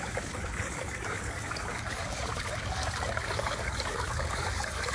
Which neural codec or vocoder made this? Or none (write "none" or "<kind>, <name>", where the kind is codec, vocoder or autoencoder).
codec, DAC